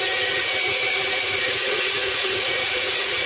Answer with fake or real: fake